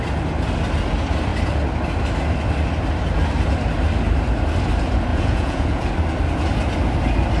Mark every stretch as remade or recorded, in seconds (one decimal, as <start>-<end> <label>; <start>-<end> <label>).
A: 0.0-5.1 recorded; 5.1-5.9 remade; 5.9-7.4 recorded